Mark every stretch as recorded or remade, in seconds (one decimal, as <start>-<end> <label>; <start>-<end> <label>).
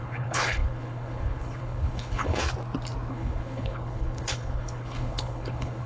0.0-2.4 remade; 2.4-3.1 recorded; 3.1-5.9 remade